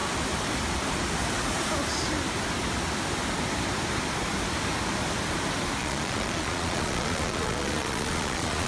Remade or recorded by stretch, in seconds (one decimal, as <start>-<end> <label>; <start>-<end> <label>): 0.0-5.8 recorded; 5.8-8.7 remade